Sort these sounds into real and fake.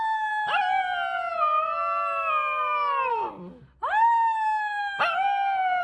real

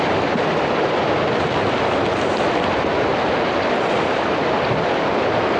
real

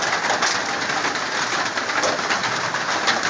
real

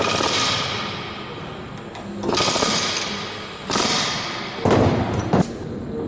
real